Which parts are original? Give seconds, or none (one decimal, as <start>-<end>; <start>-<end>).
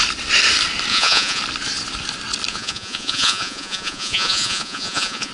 0.0-0.9; 1.4-2.5